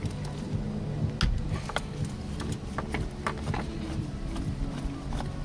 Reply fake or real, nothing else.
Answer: real